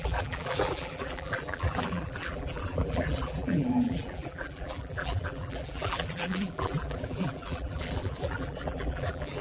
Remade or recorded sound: remade